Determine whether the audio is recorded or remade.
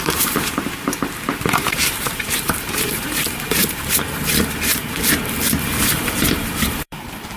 remade